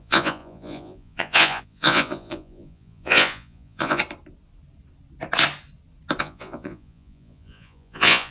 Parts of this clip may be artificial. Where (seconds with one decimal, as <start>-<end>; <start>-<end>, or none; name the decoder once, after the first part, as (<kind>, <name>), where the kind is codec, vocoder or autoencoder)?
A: 0.0-4.0 (vocoder, Vocos); 6.2-8.3